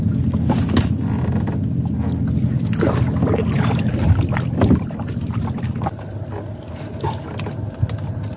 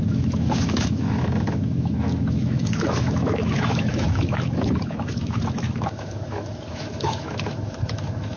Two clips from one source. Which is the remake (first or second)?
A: second